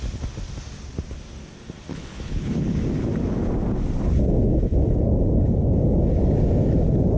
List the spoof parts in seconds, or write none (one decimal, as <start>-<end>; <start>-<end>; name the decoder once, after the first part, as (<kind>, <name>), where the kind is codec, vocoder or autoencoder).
1.9-2.8 (codec, HILCodec)

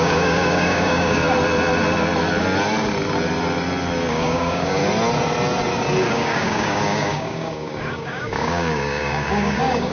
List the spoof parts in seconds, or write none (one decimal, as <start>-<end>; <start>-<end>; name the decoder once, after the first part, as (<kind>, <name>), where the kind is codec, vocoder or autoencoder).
0.0-1.2 (codec, DAC); 4.1-4.8; 6.1-9.9

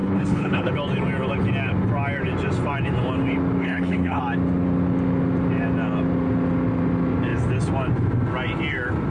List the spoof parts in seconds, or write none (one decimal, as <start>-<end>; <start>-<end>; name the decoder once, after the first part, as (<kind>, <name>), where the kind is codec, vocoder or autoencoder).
0.0-0.7 (codec, HILCodec); 3.6-4.2

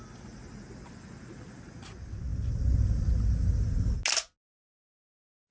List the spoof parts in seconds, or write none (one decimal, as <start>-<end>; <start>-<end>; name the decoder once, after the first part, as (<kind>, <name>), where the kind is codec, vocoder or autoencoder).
none

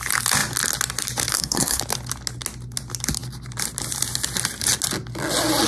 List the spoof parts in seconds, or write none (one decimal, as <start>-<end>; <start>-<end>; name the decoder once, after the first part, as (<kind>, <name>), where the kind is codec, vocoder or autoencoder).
1.3-1.8 (codec, SNAC)